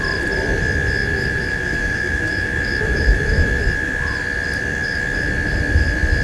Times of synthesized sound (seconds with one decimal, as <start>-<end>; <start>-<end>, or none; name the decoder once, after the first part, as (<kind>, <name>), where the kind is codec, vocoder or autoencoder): 1.0-3.6 (autoencoder, DAC-VAE); 4.7-5.3